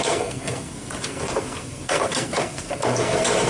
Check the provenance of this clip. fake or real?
fake